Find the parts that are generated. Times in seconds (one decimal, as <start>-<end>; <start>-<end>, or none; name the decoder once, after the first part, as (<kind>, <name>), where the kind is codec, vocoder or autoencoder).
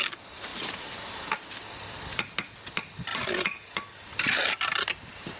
none